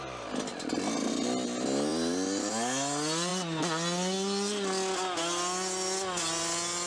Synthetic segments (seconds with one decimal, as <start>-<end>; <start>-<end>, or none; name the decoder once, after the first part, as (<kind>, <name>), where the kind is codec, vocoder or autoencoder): 1.9-2.5 (vocoder, BigVGAN v2)